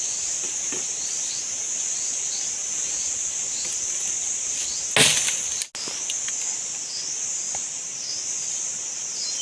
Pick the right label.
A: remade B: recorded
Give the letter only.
B